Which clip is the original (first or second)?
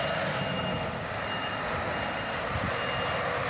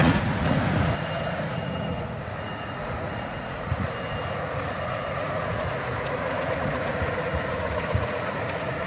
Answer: first